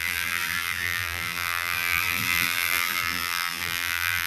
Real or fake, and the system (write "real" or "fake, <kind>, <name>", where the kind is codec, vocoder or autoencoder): fake, vocoder, BigVGAN v2